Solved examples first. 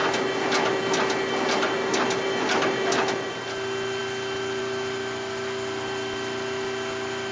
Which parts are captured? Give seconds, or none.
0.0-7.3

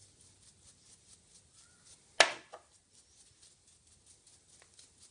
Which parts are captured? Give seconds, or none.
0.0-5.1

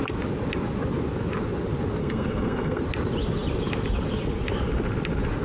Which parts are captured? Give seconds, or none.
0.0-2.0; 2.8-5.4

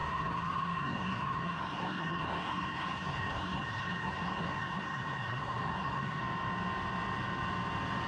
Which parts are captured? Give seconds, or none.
6.2-8.1

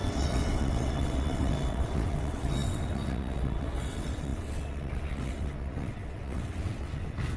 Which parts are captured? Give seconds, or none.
none

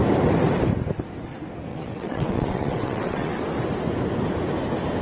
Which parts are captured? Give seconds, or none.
0.0-1.7; 3.4-5.0

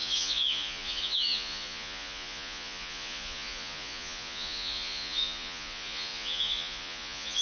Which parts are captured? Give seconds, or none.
none